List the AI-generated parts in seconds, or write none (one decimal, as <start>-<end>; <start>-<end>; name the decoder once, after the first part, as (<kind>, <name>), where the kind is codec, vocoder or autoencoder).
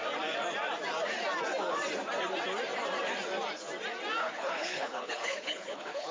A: 4.2-6.1 (codec, HILCodec)